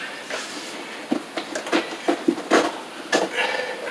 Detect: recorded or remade recorded